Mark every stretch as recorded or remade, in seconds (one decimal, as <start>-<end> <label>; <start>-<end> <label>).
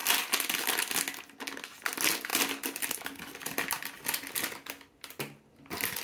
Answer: 0.0-6.0 recorded